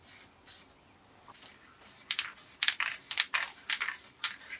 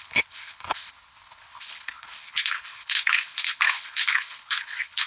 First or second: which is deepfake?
second